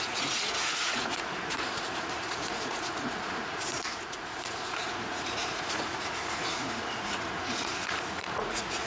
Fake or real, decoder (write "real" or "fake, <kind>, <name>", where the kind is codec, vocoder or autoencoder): fake, vocoder, Vocos